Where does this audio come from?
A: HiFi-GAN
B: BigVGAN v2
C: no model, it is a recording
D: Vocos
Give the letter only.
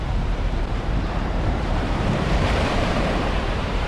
B